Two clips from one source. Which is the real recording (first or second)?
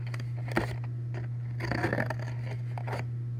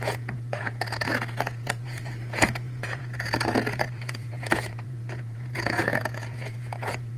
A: first